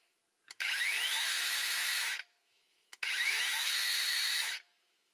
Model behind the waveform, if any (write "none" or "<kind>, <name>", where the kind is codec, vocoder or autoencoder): autoencoder, DAC-VAE